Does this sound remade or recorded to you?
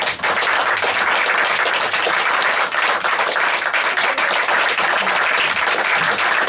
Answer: recorded